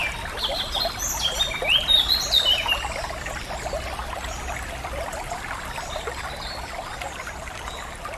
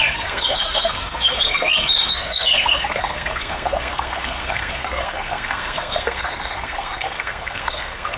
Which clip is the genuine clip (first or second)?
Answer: first